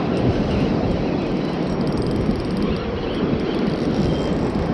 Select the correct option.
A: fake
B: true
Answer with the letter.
B